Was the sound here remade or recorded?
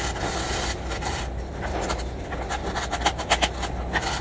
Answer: recorded